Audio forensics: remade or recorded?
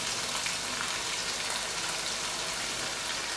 recorded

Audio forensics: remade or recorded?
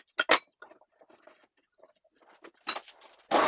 recorded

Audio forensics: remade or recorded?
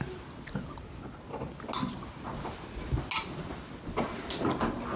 recorded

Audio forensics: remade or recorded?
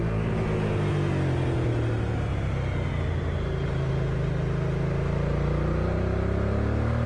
recorded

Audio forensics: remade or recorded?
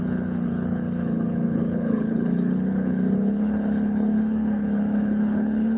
remade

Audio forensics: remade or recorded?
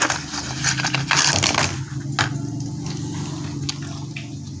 recorded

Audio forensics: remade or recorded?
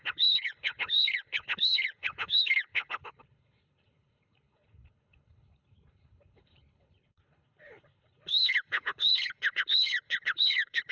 remade